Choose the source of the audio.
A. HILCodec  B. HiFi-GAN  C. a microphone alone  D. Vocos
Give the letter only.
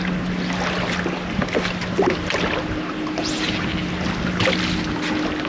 C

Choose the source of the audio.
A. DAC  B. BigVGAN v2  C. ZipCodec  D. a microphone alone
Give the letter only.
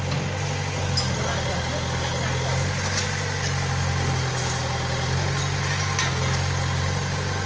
D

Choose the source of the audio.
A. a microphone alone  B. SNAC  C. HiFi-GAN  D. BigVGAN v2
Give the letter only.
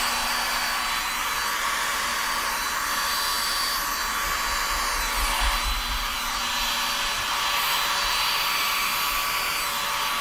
A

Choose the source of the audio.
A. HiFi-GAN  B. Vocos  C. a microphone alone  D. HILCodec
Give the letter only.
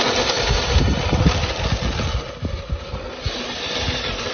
C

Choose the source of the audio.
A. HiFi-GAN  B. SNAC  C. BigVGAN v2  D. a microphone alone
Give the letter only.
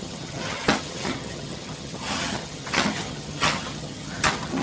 A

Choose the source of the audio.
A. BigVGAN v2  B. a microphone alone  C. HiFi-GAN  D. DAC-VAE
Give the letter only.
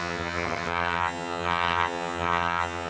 C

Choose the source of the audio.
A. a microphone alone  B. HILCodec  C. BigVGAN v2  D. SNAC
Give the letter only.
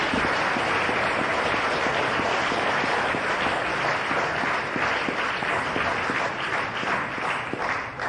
A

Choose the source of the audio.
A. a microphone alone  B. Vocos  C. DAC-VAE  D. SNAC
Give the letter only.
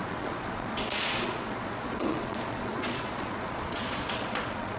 B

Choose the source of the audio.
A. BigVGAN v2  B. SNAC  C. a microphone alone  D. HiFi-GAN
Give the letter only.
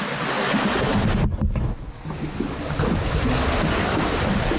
C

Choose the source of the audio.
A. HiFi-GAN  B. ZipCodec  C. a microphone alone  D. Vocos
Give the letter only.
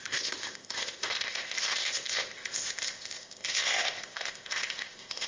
B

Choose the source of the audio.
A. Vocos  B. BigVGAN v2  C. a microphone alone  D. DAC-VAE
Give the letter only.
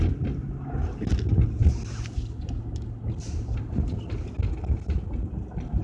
C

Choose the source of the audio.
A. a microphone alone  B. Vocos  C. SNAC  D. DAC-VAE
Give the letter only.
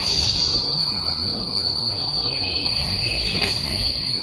C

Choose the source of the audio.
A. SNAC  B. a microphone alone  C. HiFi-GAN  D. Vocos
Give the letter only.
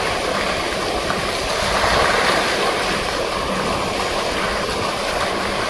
B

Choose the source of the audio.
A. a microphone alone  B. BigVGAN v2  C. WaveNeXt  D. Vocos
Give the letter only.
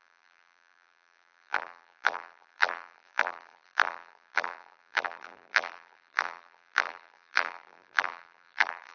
B